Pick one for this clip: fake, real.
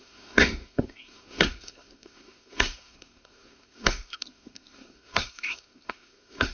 fake